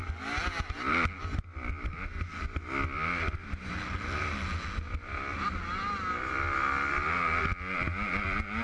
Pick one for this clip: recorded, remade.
recorded